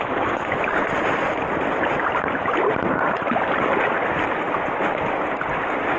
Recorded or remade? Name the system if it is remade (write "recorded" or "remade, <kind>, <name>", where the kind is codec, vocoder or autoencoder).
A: recorded